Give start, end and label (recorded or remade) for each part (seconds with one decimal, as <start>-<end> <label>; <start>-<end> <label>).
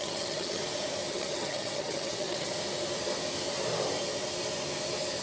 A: 0.0-0.6 remade; 0.6-1.1 recorded; 1.1-2.5 remade; 2.5-5.2 recorded